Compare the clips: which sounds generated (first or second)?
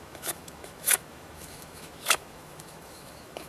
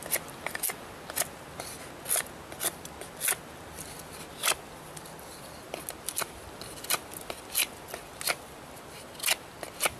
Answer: first